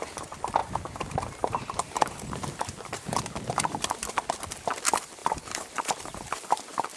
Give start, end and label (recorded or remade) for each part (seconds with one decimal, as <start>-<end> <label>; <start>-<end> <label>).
0.0-0.6 recorded; 0.6-3.2 remade; 3.2-5.2 recorded; 5.2-6.6 remade; 6.6-7.0 recorded